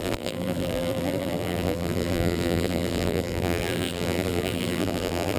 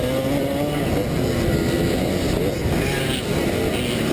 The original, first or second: second